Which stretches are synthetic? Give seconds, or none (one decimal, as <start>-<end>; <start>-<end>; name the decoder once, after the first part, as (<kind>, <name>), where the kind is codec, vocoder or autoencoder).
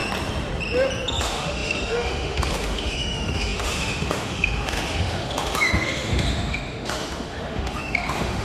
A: 1.2-8.4 (autoencoder, DAC-VAE)